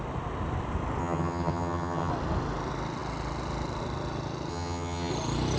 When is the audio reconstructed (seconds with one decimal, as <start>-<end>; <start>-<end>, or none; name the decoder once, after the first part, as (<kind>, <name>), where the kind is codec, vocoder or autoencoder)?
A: 1.0-2.1 (vocoder, HiFi-GAN); 4.5-5.1